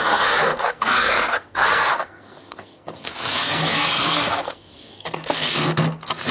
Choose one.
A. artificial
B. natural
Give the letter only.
A